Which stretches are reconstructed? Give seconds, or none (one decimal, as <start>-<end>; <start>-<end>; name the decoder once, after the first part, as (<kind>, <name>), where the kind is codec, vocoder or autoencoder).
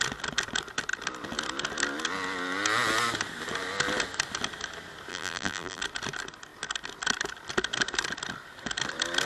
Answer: 5.1-5.8 (vocoder, BigVGAN v2)